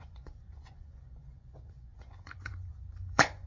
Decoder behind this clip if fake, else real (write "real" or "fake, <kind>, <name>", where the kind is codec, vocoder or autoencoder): fake, vocoder, Vocos